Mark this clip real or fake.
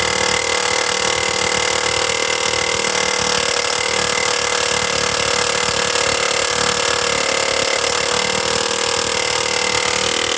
real